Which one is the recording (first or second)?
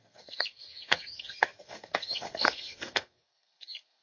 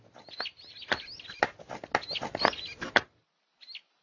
second